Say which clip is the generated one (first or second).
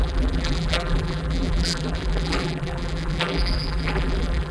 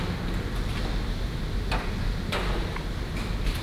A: first